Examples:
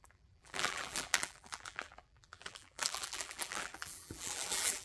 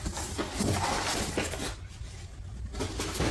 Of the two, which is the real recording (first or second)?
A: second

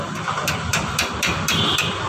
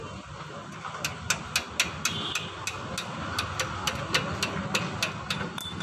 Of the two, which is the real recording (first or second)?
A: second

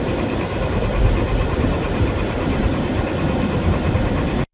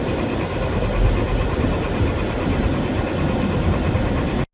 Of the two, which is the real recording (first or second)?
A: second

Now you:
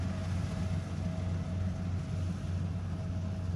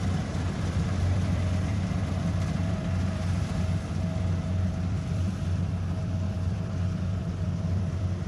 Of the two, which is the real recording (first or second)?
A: first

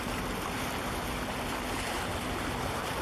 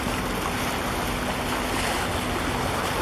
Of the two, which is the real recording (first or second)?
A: second